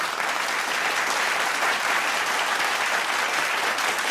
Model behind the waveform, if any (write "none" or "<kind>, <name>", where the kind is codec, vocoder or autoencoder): none